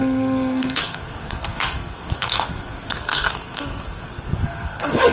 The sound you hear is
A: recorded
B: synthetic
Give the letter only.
B